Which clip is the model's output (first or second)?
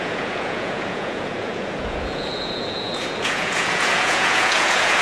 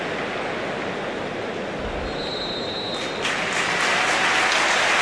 first